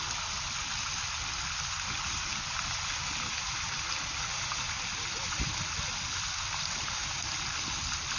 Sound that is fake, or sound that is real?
real